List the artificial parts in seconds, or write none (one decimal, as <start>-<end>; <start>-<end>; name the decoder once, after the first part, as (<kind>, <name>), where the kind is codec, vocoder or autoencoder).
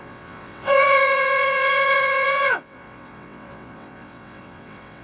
0.0-5.0 (vocoder, WaveNeXt)